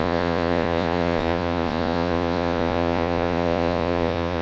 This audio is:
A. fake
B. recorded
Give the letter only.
A